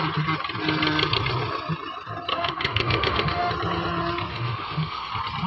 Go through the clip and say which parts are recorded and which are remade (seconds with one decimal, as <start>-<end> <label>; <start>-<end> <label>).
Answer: 0.0-2.3 recorded; 2.3-3.5 remade; 3.5-4.3 recorded; 4.3-5.1 remade; 5.1-5.5 recorded